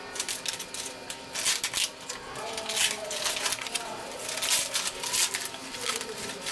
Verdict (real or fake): real